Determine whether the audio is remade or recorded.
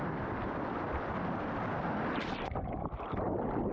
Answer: recorded